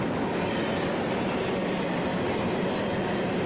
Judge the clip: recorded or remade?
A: recorded